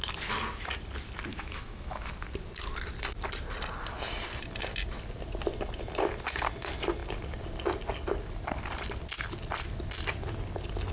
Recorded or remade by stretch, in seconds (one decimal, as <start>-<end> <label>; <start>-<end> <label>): 0.0-1.3 recorded; 1.3-2.1 remade; 2.1-10.9 recorded